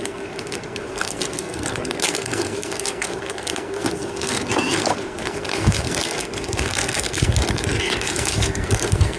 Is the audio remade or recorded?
remade